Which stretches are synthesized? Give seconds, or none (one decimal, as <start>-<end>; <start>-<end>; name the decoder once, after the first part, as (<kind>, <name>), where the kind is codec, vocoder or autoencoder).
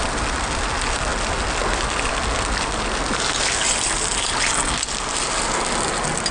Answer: none